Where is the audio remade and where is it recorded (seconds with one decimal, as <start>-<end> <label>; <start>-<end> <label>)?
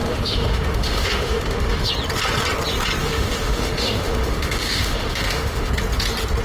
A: 0.0-1.9 remade; 1.9-3.0 recorded; 3.0-5.7 remade; 5.7-6.4 recorded